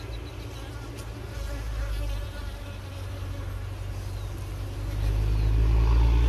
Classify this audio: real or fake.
real